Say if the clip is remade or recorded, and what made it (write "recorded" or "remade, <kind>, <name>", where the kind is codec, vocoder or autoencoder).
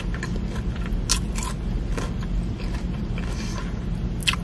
recorded